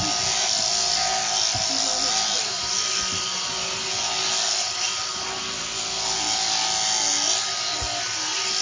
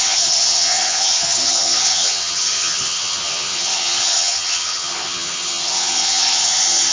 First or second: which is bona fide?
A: first